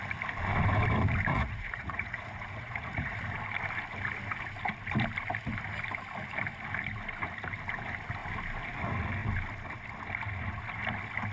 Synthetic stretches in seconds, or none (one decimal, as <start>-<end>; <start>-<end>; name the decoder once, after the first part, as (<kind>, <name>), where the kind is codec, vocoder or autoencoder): 1.3-3.2 (vocoder, Vocos)